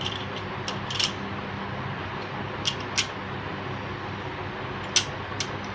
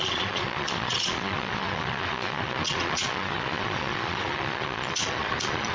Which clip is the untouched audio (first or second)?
first